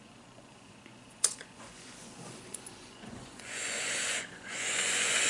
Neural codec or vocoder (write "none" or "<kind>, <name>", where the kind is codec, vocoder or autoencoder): vocoder, Vocos